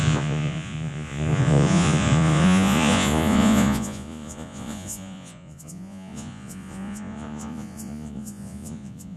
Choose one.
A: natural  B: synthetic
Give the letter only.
B